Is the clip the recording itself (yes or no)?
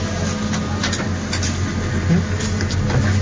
yes